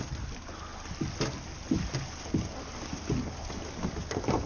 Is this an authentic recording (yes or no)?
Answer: yes